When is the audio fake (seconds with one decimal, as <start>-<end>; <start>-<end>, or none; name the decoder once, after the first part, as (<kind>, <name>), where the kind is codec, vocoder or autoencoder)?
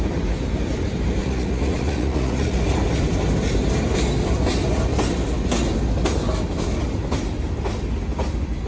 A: 1.2-2.6 (vocoder, Vocos)